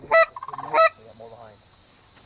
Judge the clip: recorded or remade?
recorded